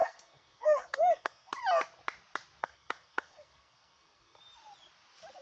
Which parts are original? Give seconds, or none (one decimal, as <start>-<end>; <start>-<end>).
1.5-2.6; 4.4-5.4